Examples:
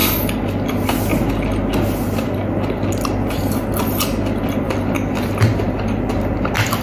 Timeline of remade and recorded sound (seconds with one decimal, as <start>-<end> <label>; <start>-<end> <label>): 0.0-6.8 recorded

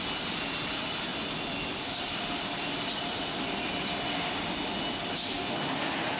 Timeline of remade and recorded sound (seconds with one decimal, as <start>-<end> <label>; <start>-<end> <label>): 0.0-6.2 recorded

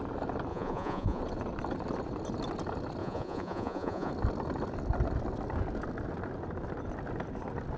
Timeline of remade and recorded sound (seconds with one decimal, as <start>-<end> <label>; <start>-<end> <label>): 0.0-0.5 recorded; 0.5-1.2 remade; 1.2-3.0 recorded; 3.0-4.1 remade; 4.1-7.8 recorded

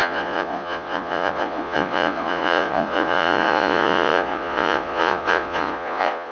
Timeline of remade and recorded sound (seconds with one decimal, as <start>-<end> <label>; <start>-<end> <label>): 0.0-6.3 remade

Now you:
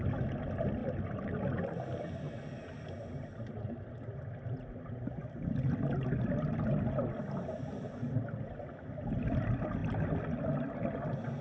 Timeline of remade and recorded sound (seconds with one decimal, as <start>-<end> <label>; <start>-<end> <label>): 0.0-11.4 recorded

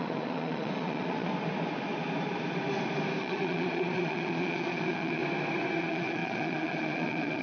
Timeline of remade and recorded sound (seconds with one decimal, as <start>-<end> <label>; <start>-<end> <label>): 0.0-1.3 remade; 1.3-3.2 recorded; 3.2-5.2 remade; 5.2-5.8 recorded; 5.8-7.4 remade